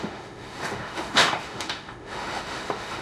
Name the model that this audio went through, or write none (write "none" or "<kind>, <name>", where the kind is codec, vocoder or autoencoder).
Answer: autoencoder, DAC-VAE